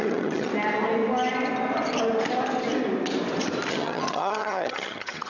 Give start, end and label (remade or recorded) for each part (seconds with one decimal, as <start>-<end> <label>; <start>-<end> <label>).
0.0-0.5 remade; 0.5-3.7 recorded; 3.7-5.3 remade